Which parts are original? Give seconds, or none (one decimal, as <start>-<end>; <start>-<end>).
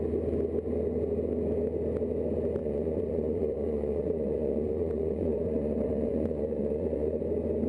0.0-2.6; 7.2-7.7